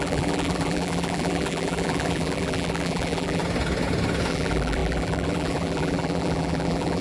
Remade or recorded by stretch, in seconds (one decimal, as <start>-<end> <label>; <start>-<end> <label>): 0.0-3.4 remade; 3.4-4.3 recorded; 4.3-7.0 remade